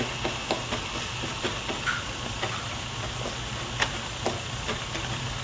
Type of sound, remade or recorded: recorded